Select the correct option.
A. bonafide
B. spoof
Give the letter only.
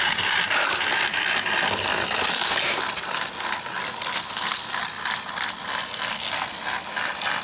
A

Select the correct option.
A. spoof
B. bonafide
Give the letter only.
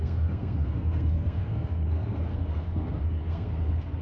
A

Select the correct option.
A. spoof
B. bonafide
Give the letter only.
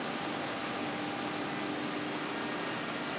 B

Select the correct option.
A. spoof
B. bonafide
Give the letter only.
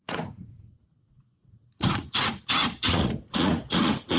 A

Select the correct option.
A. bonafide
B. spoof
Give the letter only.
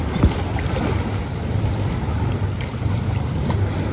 B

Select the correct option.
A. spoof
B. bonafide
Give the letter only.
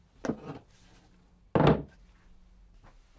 B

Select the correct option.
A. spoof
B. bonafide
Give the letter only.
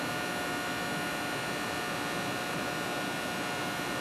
B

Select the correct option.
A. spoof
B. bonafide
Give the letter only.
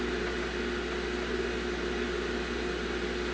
B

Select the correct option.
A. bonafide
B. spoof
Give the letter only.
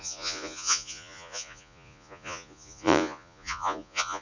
B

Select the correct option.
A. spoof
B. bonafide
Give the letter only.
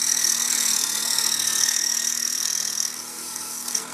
A